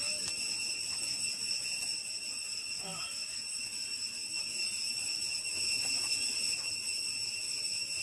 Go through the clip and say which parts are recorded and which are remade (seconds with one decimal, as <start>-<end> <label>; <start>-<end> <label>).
0.0-8.0 recorded